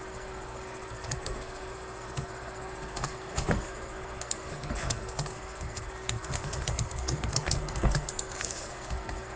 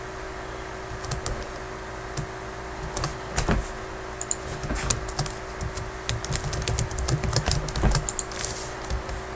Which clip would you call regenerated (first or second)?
first